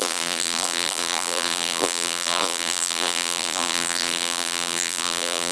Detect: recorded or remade remade